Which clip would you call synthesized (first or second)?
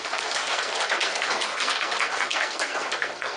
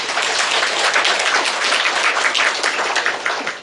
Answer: first